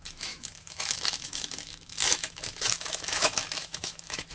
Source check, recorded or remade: remade